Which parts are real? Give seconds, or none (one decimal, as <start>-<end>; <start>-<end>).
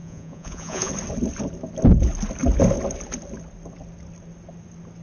0.9-5.0